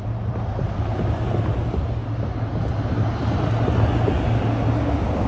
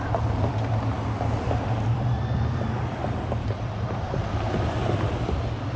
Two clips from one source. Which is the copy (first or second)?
second